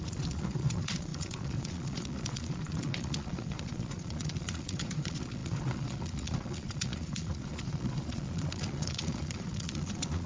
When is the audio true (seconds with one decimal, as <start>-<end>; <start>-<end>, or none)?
none